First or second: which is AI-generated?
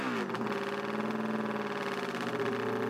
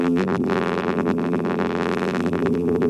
second